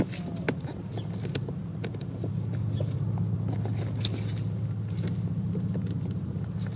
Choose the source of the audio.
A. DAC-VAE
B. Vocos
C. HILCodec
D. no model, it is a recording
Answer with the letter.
D